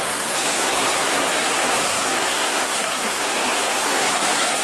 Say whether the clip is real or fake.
fake